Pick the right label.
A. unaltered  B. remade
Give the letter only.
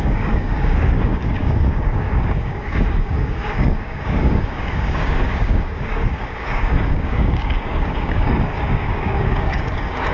B